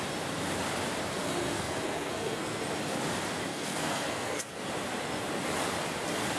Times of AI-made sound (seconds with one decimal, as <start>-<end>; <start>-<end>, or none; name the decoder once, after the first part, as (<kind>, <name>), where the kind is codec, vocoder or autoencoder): 1.2-2.6 (codec, SNAC); 3.5-4.7